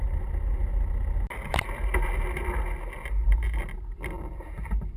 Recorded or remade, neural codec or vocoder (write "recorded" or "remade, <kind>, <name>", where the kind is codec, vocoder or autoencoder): recorded